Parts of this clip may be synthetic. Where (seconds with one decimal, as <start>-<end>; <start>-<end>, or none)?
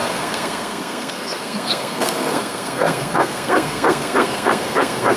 0.0-5.2